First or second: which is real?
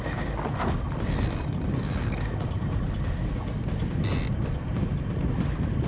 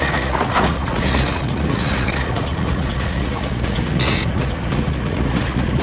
first